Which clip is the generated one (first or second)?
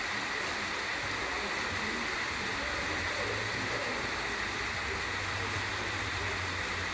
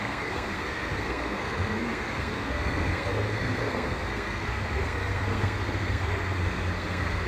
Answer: second